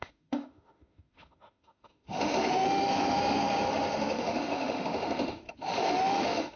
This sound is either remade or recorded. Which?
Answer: remade